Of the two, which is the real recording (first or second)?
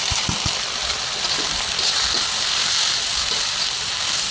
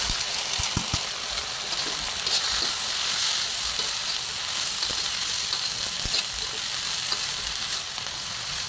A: second